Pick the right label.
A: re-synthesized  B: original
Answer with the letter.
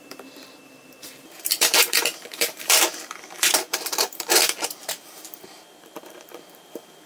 A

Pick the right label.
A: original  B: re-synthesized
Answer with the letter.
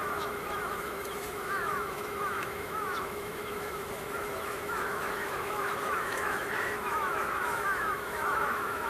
B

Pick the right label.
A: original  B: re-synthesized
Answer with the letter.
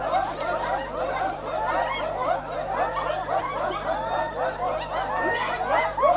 A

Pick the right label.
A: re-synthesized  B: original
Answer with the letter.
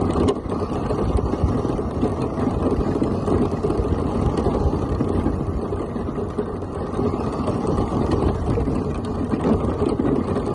B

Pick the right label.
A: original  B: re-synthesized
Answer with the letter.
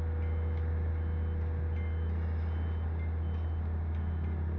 A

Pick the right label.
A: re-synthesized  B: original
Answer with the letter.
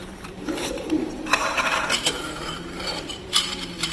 A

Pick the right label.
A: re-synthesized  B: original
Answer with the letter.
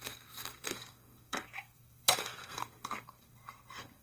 A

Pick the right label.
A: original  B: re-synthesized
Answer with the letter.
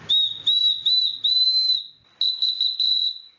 A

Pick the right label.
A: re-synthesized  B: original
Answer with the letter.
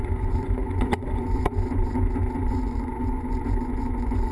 A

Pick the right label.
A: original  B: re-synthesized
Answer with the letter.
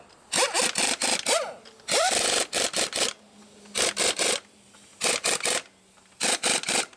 A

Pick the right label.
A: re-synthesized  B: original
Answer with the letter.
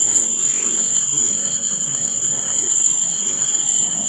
A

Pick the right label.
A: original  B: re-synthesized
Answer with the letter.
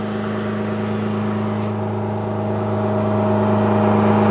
A